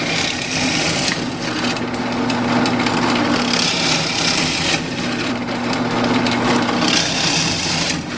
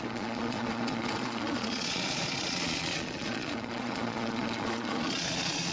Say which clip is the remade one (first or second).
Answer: second